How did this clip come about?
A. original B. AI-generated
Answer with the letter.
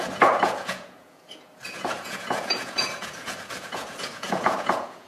B